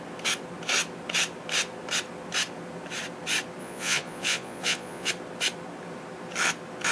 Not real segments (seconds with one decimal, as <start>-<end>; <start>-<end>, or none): 3.6-5.1